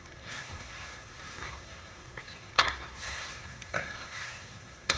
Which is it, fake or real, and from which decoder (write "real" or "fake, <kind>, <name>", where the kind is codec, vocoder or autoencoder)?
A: fake, codec, SNAC